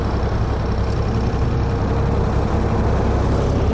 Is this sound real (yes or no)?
yes